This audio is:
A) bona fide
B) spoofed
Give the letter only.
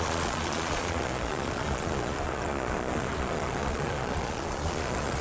B